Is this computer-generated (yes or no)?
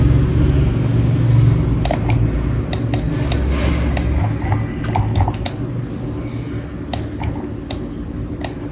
no